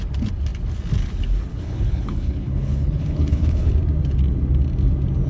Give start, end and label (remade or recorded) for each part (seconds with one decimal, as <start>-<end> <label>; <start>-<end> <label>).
0.0-1.5 recorded; 1.5-3.7 remade; 3.7-5.3 recorded

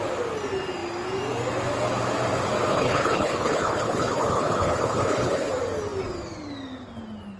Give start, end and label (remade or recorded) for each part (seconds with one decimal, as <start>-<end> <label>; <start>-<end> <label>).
0.0-2.7 recorded; 2.7-5.5 remade; 5.5-7.4 recorded

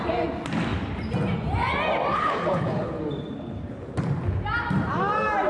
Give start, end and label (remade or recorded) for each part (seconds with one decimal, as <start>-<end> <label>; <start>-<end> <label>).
0.0-2.1 recorded; 2.1-3.0 remade; 3.0-5.5 recorded

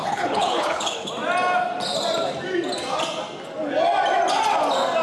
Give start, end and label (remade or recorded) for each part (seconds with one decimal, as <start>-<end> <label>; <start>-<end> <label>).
0.0-1.1 remade; 1.1-5.0 recorded

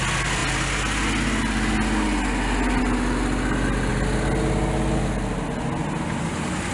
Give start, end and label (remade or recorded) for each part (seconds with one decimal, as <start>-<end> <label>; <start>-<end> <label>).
0.0-6.7 recorded